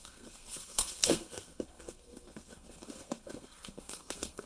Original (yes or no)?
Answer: no